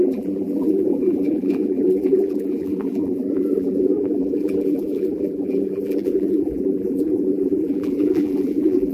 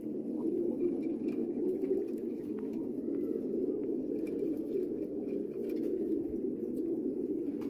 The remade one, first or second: first